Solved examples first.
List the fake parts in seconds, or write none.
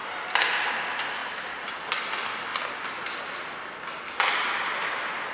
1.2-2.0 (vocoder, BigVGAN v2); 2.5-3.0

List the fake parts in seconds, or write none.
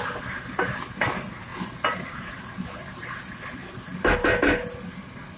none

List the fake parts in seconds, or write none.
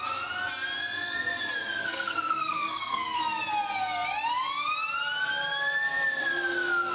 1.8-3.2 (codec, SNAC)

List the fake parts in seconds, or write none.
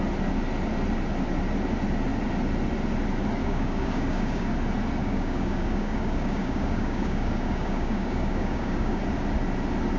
3.4-4.5 (codec, DAC); 5.0-9.0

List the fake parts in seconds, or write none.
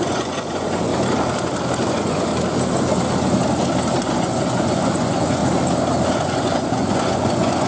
0.0-0.9 (vocoder, Vocos); 1.9-2.3; 4.0-5.4; 6.1-7.7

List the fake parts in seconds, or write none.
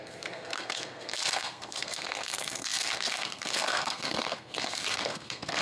0.0-5.6 (codec, SNAC)